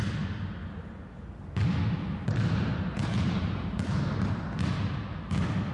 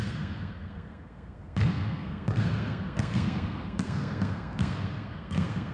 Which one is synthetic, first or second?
second